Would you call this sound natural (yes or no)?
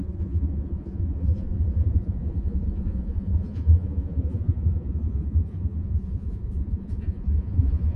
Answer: no